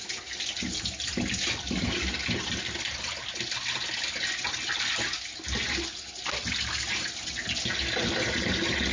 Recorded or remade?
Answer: recorded